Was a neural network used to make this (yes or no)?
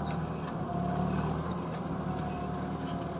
no